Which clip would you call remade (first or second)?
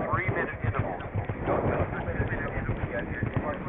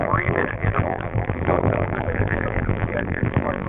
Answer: second